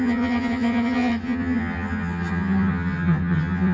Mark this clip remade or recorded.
remade